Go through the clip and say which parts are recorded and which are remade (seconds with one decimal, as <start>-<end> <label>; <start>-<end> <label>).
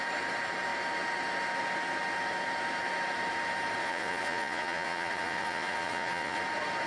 0.0-3.8 recorded; 3.8-6.4 remade; 6.4-6.9 recorded